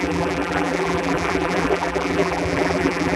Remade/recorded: remade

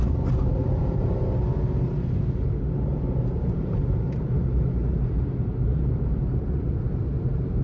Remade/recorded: remade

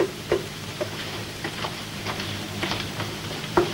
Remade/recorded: remade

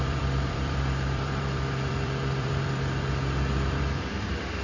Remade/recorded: remade